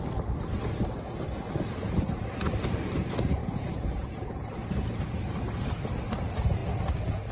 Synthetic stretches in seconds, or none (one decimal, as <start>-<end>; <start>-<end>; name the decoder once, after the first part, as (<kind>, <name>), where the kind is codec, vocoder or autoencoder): 3.4-5.2 (vocoder, BigVGAN v2)